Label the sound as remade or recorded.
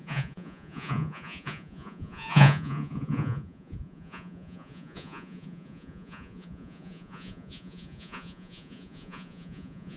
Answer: remade